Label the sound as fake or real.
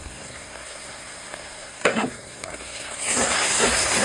fake